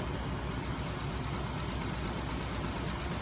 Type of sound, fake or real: real